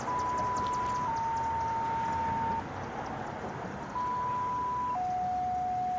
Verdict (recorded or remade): recorded